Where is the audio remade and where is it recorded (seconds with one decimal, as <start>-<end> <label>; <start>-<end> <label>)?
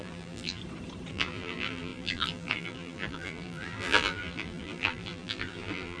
0.0-0.6 remade; 0.6-1.1 recorded; 1.1-6.0 remade